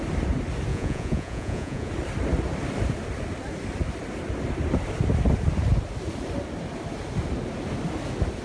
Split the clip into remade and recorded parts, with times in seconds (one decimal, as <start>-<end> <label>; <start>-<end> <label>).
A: 0.0-0.7 recorded; 0.7-1.9 remade; 1.9-8.4 recorded